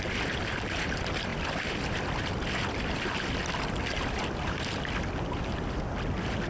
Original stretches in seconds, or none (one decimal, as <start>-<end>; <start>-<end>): 0.0-6.5